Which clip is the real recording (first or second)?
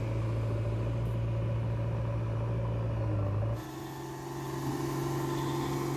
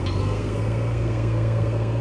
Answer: first